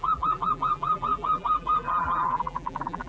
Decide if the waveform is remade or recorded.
remade